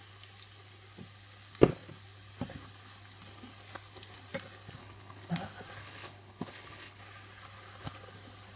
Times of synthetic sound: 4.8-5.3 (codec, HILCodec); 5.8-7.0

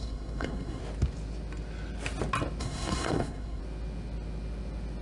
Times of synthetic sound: 0.0-0.8 (codec, SNAC); 2.6-3.6

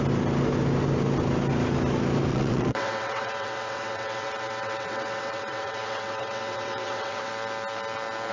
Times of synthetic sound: 2.3-7.3 (vocoder, WaveNeXt)

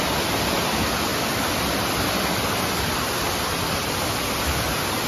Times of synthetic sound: 1.1-4.2 (vocoder, BigVGAN v2)

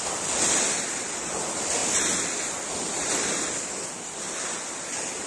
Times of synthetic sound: none

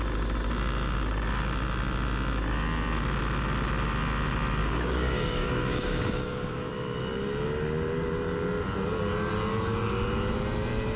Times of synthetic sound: 4.6-6.7 (codec, DAC)

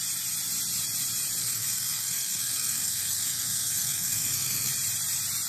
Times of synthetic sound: 1.4-4.7 (codec, SNAC)

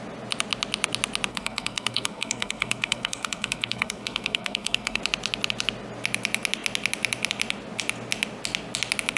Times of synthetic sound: 1.3-5.0 (codec, SNAC)